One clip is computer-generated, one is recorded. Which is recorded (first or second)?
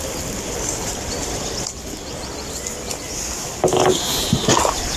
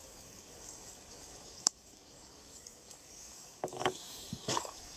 first